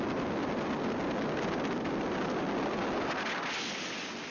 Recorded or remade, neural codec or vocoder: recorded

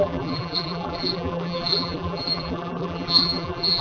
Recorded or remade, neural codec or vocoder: remade, vocoder, BigVGAN v2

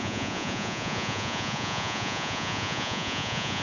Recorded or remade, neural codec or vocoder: remade, vocoder, Vocos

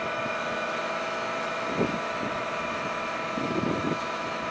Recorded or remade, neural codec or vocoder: remade, autoencoder, DAC-VAE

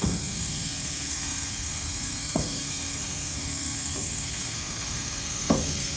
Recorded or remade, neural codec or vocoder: remade, codec, SNAC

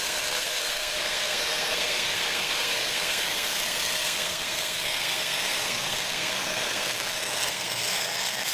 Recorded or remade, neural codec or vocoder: remade, codec, SNAC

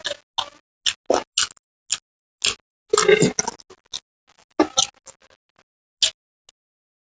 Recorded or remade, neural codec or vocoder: recorded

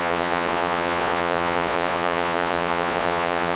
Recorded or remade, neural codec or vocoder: remade, vocoder, Vocos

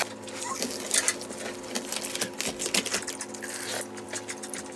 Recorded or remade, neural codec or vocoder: recorded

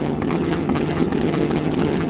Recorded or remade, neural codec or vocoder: remade, vocoder, HiFi-GAN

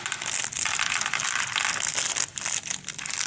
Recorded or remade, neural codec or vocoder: recorded